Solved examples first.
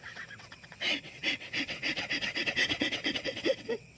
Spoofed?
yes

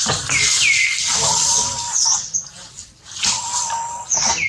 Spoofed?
no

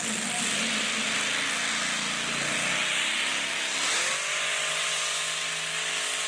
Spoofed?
no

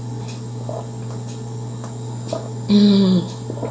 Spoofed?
no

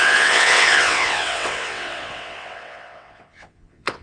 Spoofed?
yes